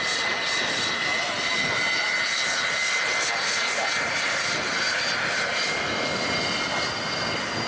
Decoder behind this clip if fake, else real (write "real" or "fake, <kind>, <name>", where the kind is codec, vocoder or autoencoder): real